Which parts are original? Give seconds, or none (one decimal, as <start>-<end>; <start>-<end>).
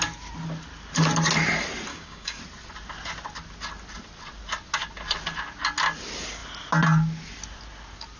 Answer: 0.0-1.9; 2.4-8.2